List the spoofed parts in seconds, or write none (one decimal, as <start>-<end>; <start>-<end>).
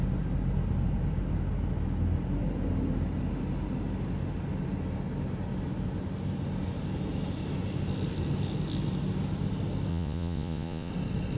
9.9-10.9